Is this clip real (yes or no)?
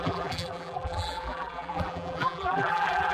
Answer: no